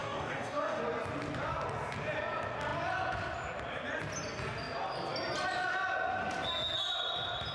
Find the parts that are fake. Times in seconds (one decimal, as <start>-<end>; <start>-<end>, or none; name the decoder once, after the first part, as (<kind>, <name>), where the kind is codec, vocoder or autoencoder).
0.0-0.8 (codec, DAC)